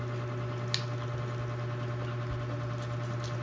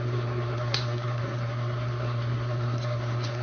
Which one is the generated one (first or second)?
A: second